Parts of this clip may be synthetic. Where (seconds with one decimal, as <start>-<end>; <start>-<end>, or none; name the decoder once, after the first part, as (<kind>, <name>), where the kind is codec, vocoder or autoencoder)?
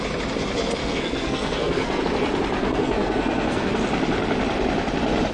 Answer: 0.8-2.0 (codec, SNAC); 2.6-3.7